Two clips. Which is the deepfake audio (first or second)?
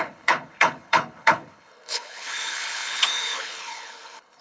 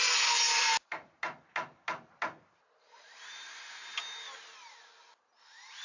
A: first